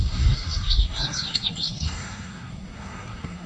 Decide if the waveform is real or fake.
fake